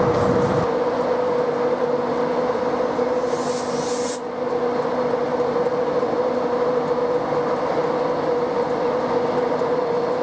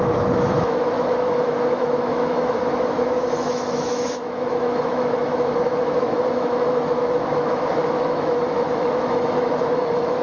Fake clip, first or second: second